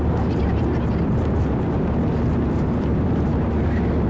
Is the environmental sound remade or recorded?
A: remade